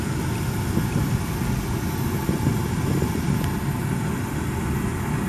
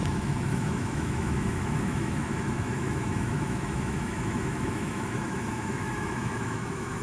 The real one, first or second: first